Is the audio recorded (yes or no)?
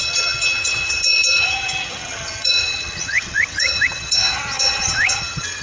no